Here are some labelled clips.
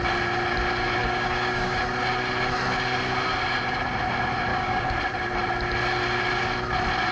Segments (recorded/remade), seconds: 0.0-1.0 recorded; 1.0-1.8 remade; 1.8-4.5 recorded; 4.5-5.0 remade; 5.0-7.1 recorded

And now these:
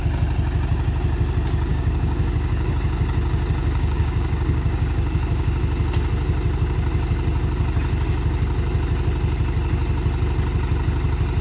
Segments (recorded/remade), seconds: 0.0-1.7 recorded; 1.7-2.7 remade; 2.7-3.6 recorded; 3.6-5.6 remade; 5.6-11.4 recorded

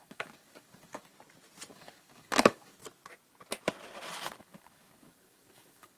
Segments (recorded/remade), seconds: 0.0-1.1 remade; 1.1-1.7 recorded; 1.7-2.8 remade; 2.8-4.4 recorded; 4.4-6.0 remade